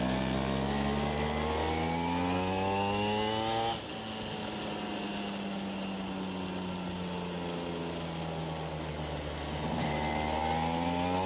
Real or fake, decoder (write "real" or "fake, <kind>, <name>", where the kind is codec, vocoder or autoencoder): real